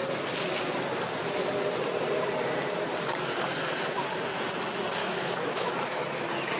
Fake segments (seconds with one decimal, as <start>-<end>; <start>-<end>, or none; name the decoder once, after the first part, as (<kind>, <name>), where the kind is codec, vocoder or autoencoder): 5.0-5.7 (autoencoder, DAC-VAE)